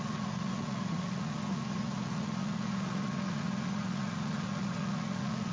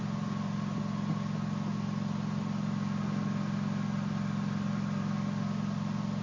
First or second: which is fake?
first